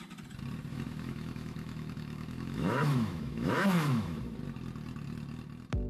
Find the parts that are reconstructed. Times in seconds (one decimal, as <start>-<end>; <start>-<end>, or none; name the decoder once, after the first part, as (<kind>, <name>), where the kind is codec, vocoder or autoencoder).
0.7-4.2 (autoencoder, DAC-VAE)